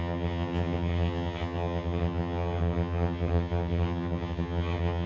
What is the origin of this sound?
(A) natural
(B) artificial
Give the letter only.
B